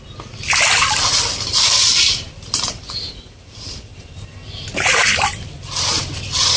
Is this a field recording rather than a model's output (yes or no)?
no